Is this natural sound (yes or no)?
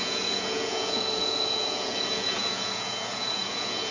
no